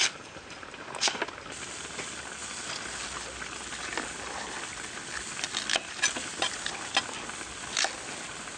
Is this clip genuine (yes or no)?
yes